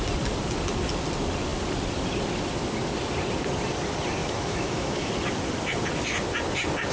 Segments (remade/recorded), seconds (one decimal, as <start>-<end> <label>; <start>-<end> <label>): 0.0-4.2 recorded; 4.2-5.1 remade; 5.1-6.9 recorded